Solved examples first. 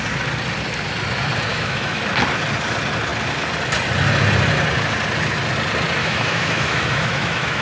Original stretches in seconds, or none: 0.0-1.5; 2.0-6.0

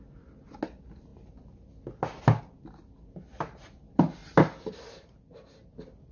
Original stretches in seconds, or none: 0.0-6.1

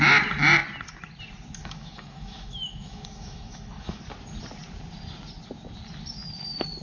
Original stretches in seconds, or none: 0.0-1.6; 4.0-6.8

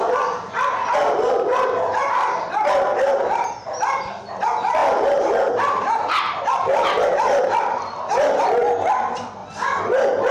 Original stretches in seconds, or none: 0.0-10.3